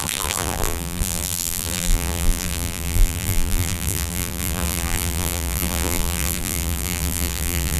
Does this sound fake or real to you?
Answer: fake